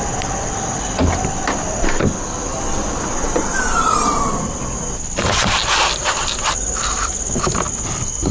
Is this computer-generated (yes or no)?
no